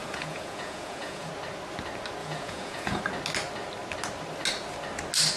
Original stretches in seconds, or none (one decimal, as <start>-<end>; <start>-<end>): 1.3-2.2; 3.0-5.4